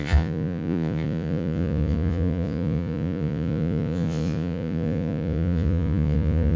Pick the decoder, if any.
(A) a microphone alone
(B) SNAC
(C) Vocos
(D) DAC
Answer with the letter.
C